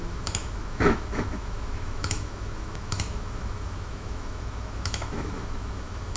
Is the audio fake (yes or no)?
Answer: yes